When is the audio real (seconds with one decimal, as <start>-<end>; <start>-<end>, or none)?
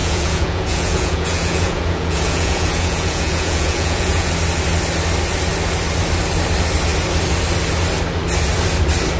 4.3-9.2